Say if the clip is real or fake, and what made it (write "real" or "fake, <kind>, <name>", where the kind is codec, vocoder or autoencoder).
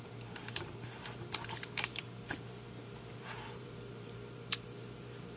fake, vocoder, BigVGAN v2